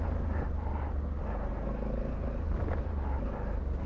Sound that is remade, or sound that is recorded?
recorded